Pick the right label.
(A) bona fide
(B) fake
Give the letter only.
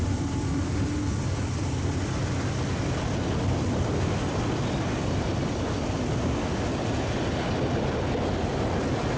A